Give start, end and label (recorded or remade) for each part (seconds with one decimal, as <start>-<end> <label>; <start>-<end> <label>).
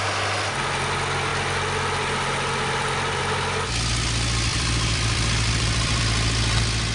0.0-4.5 recorded; 4.5-6.0 remade; 6.0-6.9 recorded